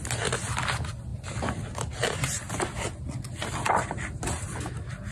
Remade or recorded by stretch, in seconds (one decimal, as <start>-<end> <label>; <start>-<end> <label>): 0.0-1.1 recorded; 1.1-4.2 remade; 4.2-5.1 recorded